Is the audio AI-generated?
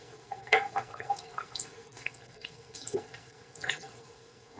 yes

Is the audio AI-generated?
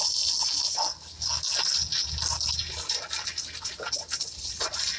no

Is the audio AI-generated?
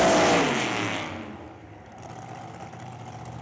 no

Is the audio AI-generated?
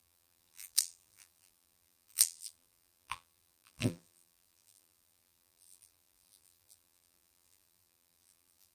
yes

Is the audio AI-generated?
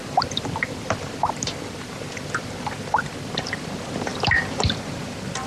yes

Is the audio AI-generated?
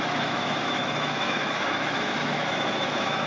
yes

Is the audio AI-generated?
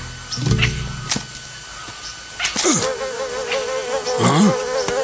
no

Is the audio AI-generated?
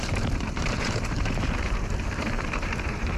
yes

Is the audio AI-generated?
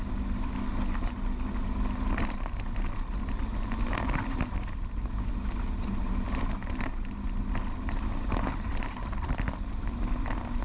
no